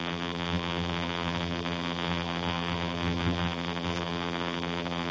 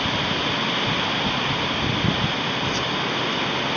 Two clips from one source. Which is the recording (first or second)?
second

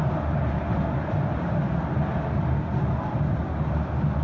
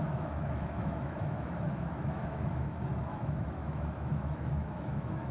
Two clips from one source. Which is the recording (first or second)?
first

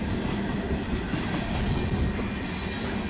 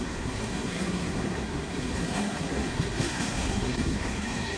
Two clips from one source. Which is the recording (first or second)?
first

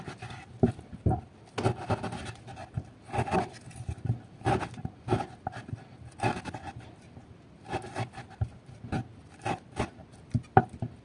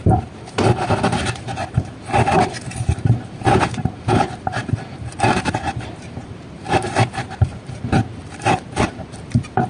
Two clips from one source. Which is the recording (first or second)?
first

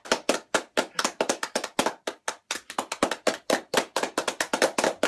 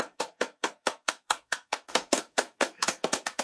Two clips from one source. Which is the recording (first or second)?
first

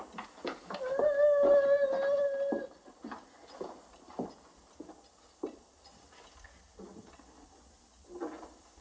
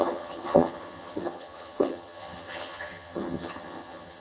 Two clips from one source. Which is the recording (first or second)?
first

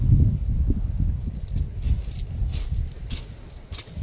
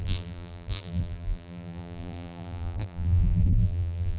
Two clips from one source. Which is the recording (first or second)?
first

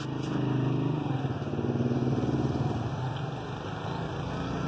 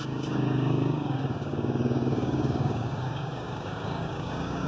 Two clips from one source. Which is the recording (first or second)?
first